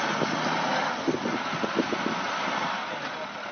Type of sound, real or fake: real